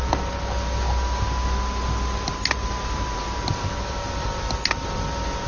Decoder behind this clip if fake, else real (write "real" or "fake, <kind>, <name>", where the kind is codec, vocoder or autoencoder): real